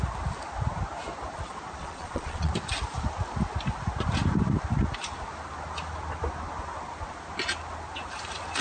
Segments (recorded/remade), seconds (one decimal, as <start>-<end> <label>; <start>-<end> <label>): 0.0-1.8 recorded; 1.8-2.5 remade; 2.5-8.6 recorded